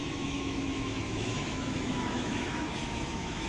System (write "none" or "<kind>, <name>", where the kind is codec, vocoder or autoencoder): autoencoder, DAC-VAE